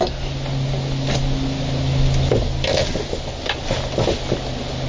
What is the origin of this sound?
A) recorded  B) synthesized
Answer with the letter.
A